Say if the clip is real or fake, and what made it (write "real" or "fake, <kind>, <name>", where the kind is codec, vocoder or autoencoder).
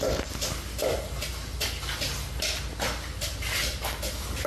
real